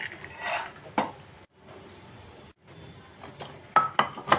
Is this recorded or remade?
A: recorded